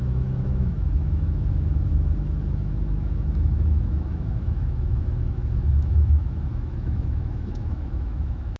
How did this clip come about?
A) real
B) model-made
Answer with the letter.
B